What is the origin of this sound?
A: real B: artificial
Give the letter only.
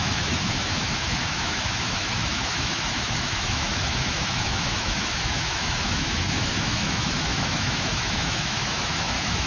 B